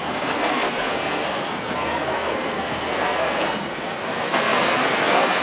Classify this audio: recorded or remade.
remade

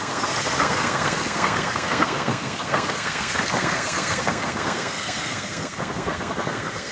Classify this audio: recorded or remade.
remade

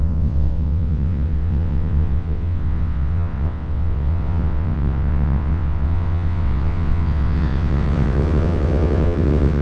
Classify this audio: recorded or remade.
remade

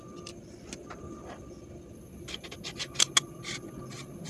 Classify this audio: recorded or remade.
recorded